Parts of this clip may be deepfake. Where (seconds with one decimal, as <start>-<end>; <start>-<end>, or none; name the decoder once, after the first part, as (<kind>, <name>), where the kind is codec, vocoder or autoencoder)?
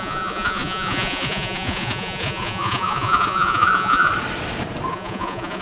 0.0-4.1 (vocoder, Vocos); 4.9-5.6